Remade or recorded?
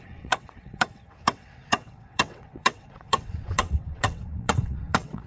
remade